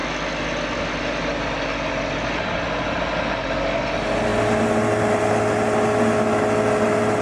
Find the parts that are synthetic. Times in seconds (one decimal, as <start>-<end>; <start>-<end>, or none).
none